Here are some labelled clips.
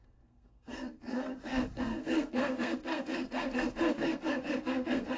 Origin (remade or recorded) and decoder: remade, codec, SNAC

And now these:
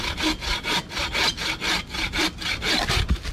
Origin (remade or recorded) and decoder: recorded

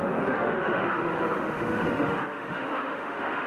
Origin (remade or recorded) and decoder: remade, autoencoder, DAC-VAE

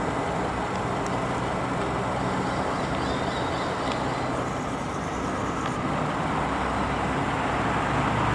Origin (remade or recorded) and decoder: recorded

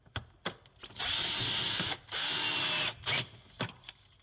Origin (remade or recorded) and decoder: recorded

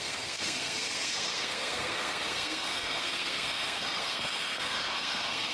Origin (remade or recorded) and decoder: remade, codec, SNAC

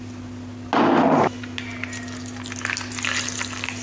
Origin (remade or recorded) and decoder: recorded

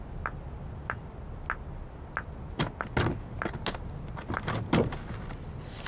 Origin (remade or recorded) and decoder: recorded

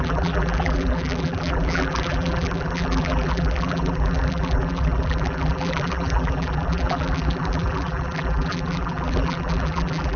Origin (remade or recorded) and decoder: remade, vocoder, BigVGAN v2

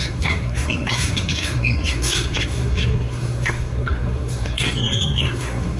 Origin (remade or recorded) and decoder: remade, codec, SNAC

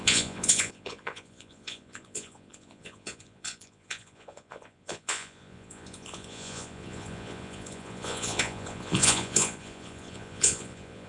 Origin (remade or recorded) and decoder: remade, vocoder, Vocos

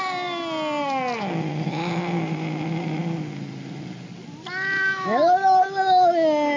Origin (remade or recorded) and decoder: recorded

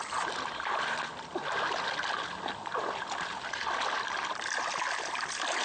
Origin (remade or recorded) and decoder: recorded